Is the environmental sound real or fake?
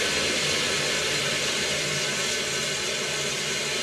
real